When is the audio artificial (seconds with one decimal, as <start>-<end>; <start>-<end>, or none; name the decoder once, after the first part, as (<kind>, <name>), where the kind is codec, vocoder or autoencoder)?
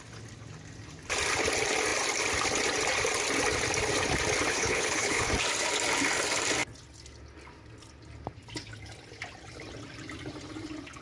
4.5-5.3 (codec, HILCodec)